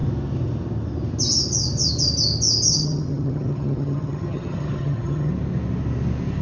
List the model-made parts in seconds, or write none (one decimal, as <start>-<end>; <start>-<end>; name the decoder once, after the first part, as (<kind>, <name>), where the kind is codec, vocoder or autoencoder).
2.7-5.3 (vocoder, HiFi-GAN)